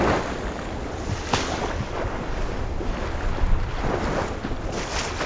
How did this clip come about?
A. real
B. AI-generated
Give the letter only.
A